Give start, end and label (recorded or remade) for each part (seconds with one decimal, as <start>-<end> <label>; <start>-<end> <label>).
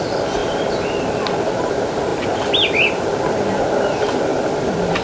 0.0-5.0 recorded